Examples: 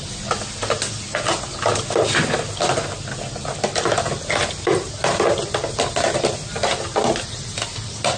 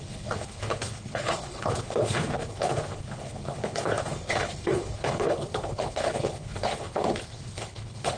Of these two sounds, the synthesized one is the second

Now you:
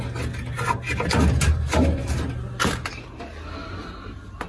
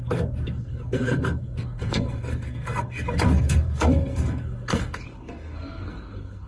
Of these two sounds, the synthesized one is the second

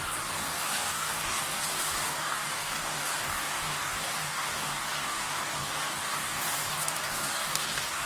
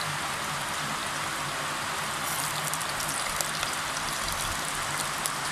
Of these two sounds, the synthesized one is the first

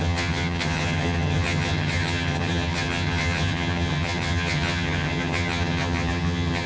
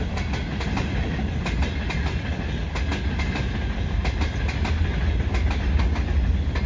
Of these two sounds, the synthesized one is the first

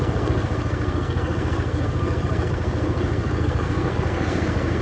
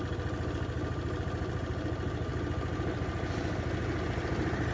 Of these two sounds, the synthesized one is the first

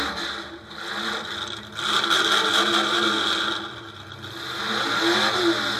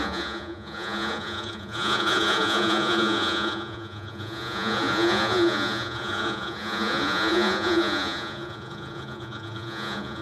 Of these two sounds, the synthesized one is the second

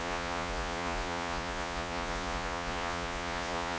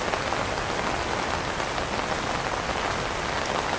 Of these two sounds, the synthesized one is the first